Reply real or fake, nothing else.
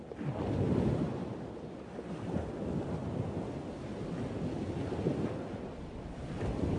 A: real